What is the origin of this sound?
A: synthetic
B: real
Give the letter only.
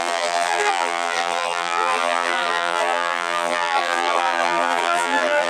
A